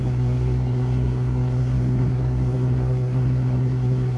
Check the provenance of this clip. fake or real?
fake